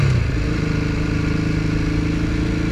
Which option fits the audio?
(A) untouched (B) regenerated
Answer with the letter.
A